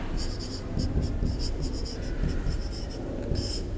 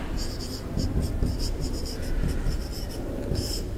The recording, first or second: first